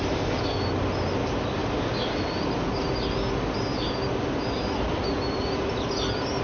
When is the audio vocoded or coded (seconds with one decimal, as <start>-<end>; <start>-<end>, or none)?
none

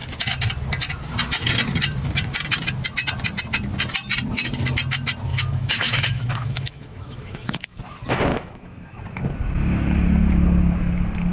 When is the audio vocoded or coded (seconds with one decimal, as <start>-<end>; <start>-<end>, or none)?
5.3-7.8; 8.3-9.0

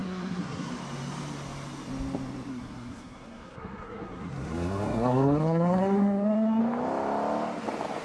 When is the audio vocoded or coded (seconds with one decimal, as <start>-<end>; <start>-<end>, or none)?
0.0-0.7; 2.5-6.6

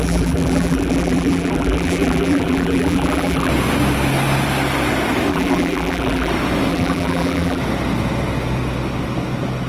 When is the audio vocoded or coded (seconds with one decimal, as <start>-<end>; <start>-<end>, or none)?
0.0-3.5; 5.3-6.3; 6.7-7.6

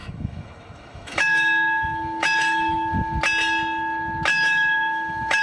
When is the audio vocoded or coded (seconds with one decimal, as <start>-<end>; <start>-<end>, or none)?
0.0-3.2; 4.3-5.4